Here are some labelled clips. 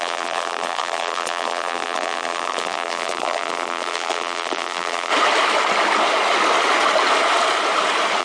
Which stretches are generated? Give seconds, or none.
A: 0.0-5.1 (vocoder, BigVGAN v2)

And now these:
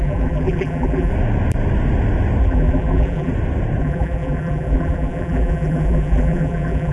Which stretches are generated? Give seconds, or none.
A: 0.0-1.1 (vocoder, BigVGAN v2); 2.4-3.3; 3.8-6.9

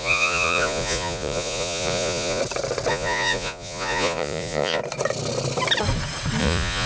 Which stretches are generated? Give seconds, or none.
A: 0.0-2.4 (vocoder, Vocos); 2.9-4.8; 6.4-6.9